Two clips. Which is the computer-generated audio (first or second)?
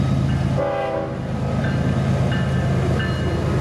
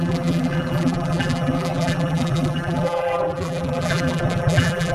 second